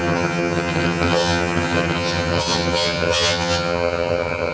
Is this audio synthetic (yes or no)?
yes